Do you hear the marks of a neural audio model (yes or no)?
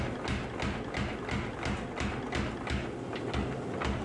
no